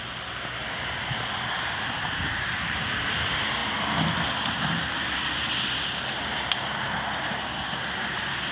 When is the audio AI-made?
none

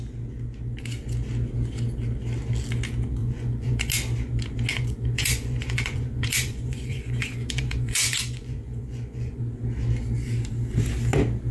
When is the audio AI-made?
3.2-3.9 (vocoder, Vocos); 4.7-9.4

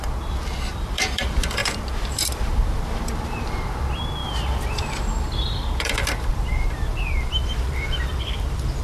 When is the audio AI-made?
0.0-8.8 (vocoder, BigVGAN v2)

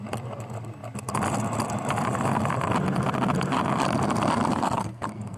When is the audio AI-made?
4.5-5.4 (codec, SNAC)

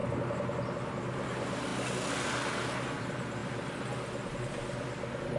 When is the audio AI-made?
none